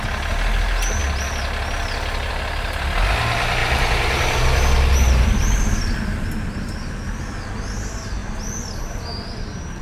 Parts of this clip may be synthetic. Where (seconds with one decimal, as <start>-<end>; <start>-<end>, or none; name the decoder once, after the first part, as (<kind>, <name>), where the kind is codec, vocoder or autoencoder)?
3.6-4.4 (vocoder, BigVGAN v2)